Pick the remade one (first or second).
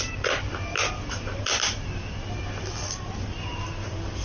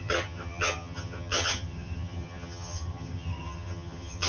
second